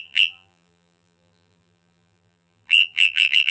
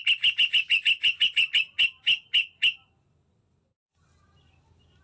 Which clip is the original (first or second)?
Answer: second